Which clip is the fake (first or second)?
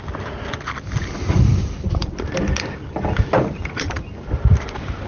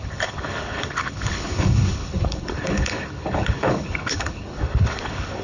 second